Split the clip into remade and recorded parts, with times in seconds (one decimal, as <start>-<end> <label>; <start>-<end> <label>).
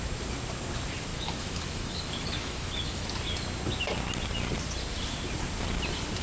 0.0-1.1 recorded; 1.1-3.1 remade; 3.1-6.2 recorded